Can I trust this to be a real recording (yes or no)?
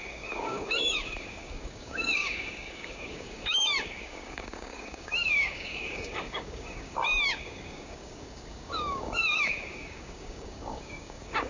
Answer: no